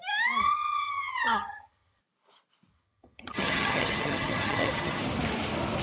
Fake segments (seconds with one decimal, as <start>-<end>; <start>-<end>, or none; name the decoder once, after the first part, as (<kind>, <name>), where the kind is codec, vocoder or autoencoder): 0.4-2.0 (vocoder, HiFi-GAN); 2.7-5.0